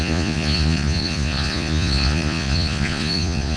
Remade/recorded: remade